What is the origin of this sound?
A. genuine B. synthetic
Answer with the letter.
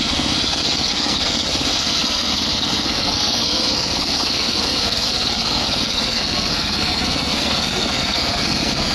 B